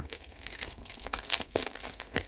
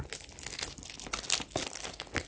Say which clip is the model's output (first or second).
first